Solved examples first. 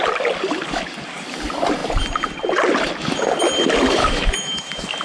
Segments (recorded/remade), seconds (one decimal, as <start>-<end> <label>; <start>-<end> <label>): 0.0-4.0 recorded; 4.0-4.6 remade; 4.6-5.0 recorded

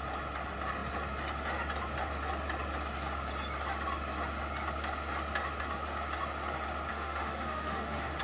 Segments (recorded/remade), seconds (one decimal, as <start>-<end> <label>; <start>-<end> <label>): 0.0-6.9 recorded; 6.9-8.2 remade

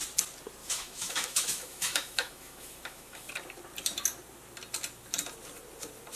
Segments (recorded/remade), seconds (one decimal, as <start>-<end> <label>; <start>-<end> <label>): 0.0-0.6 recorded; 0.6-3.3 remade; 3.3-6.2 recorded

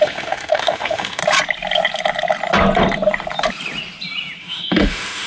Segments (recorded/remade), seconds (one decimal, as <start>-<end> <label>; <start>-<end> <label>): 0.0-1.2 remade; 1.2-4.4 recorded; 4.4-5.3 remade

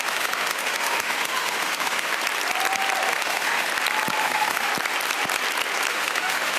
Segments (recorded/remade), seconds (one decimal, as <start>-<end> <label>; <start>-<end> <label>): 0.0-2.1 remade; 2.1-3.1 recorded; 3.1-3.7 remade; 3.7-4.2 recorded; 4.2-4.7 remade; 4.7-5.9 recorded; 5.9-6.6 remade

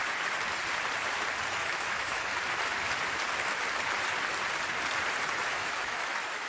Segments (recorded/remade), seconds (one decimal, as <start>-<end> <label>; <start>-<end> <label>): 0.0-1.5 recorded; 1.5-2.3 remade; 2.3-5.3 recorded; 5.3-6.5 remade

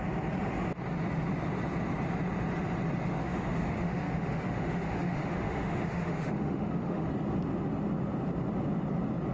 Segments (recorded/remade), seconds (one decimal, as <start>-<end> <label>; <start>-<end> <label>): 0.0-3.2 recorded; 3.2-7.1 remade; 7.1-9.3 recorded